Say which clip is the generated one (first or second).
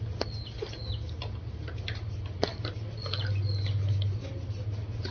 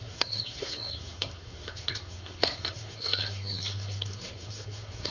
second